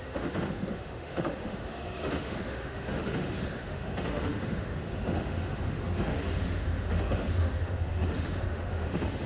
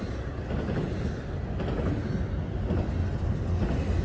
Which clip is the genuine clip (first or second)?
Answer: second